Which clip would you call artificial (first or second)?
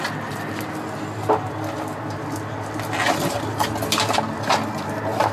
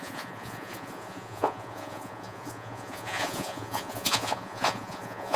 second